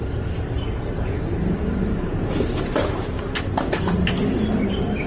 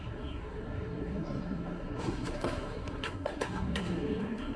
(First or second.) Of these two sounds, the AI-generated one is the second